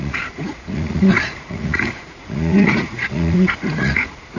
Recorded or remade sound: remade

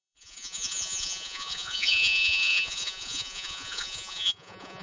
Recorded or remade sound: remade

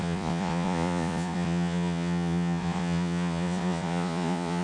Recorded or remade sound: remade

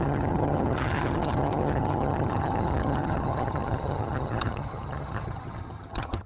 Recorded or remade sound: remade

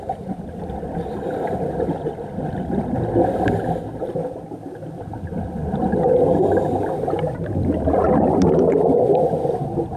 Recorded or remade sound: recorded